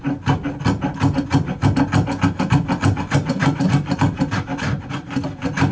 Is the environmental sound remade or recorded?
recorded